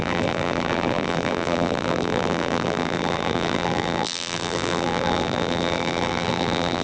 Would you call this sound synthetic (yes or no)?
yes